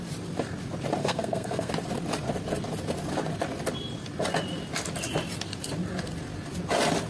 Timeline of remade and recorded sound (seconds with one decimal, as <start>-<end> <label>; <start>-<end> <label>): 0.0-1.0 recorded; 1.0-1.7 remade; 1.7-7.1 recorded